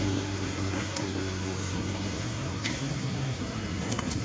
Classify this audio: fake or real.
fake